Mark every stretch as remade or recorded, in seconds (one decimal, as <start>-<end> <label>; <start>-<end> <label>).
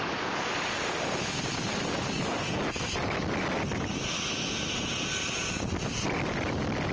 0.0-6.9 recorded